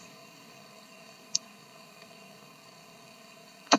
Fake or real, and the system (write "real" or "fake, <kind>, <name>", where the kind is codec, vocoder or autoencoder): fake, codec, SNAC